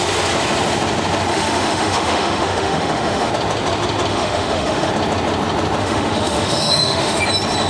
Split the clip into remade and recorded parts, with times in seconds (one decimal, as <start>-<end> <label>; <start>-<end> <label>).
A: 0.0-1.3 recorded; 1.3-3.3 remade; 3.3-4.1 recorded; 4.1-4.9 remade; 4.9-5.8 recorded; 5.8-7.2 remade; 7.2-7.7 recorded